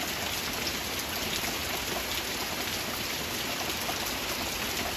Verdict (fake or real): real